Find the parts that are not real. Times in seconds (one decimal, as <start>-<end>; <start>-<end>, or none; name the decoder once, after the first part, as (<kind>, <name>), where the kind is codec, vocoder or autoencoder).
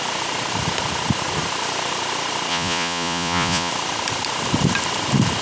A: 2.5-3.7 (vocoder, Vocos)